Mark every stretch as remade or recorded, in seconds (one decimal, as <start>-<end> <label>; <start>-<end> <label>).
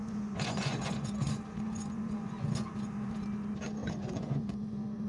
0.0-3.1 remade; 3.1-3.8 recorded; 3.8-5.1 remade